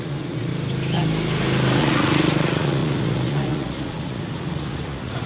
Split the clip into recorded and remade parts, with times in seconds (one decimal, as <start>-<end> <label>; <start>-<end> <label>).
0.0-0.5 remade; 0.5-1.8 recorded; 1.8-5.3 remade